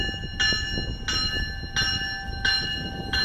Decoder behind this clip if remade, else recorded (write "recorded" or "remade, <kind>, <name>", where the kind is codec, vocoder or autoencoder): recorded